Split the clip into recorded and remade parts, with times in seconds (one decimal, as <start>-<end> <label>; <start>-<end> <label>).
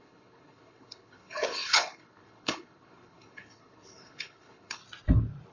0.0-4.8 remade; 4.8-5.5 recorded